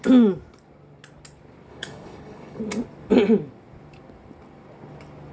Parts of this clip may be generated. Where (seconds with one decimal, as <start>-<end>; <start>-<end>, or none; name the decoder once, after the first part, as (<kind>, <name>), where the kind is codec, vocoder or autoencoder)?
1.7-2.6 (codec, HILCodec)